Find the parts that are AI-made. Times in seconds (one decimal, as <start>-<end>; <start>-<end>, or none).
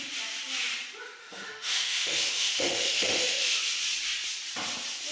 1.2-3.6